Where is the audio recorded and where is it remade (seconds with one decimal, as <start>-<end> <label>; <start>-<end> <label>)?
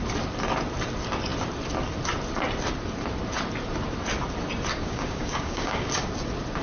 0.0-4.7 recorded; 4.7-5.9 remade; 5.9-6.6 recorded